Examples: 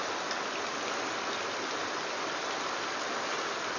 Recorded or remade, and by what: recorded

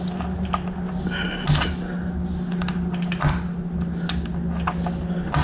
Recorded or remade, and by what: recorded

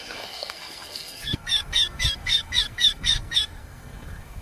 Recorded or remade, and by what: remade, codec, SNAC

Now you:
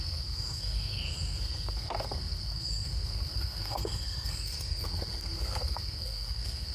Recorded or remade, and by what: remade, codec, SNAC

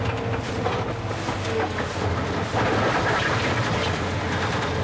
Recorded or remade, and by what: recorded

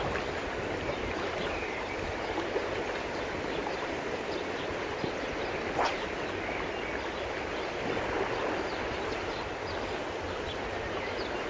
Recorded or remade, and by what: recorded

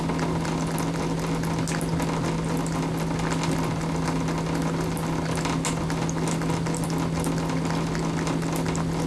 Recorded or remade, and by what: recorded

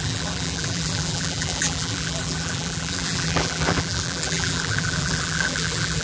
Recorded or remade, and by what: remade, vocoder, BigVGAN v2